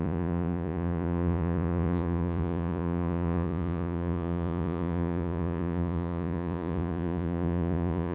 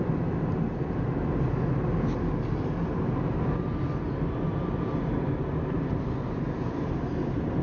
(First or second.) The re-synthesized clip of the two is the first